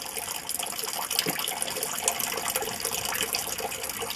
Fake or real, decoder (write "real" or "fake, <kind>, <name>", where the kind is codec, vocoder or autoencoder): real